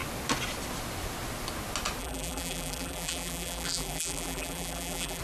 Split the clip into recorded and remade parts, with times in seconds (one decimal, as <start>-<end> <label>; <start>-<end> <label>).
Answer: 0.0-2.0 recorded; 2.0-5.2 remade